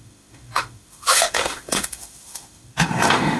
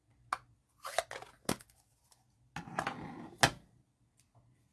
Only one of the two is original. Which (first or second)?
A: second